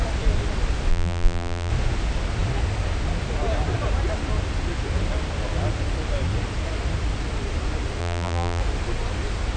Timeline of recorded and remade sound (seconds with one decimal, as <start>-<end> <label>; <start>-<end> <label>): 0.0-0.9 recorded; 0.9-1.7 remade; 1.7-8.0 recorded; 8.0-8.6 remade; 8.6-9.6 recorded